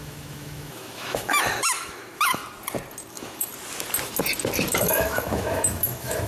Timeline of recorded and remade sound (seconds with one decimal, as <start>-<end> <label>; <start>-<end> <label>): 0.0-2.4 remade; 2.4-3.1 recorded; 3.1-3.5 remade; 3.5-4.7 recorded; 4.7-6.3 remade